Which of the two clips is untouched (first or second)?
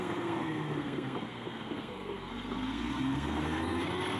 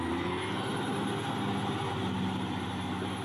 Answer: second